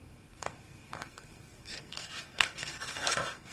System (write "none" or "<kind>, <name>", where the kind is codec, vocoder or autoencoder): codec, SNAC